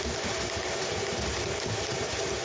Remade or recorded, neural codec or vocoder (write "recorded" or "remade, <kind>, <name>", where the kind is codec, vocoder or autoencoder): recorded